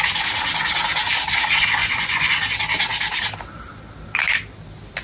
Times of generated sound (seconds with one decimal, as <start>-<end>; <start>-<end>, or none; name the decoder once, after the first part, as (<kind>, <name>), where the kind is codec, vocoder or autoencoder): 1.8-2.4 (vocoder, Vocos)